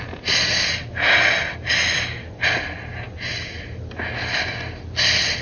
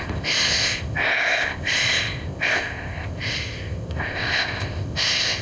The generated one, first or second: second